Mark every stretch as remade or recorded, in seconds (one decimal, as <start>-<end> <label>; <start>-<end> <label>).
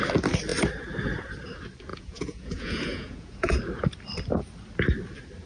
0.0-1.9 recorded; 1.9-3.6 remade; 3.6-5.5 recorded